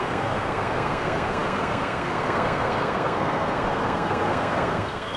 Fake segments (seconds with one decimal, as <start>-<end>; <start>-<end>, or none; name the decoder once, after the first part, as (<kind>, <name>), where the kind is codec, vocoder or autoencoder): 0.0-5.2 (codec, SNAC)